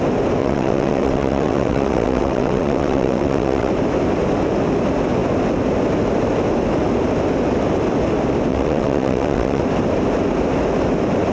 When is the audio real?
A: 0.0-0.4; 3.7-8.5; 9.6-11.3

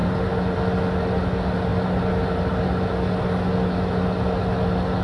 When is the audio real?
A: 0.0-5.0